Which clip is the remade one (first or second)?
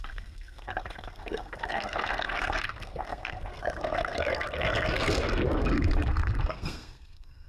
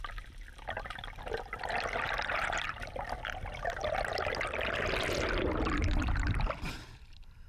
first